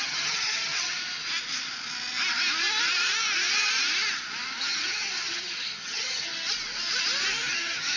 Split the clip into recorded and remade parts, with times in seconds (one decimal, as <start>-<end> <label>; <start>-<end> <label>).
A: 0.0-1.0 remade; 1.0-4.6 recorded; 4.6-6.3 remade; 6.3-7.5 recorded; 7.5-8.0 remade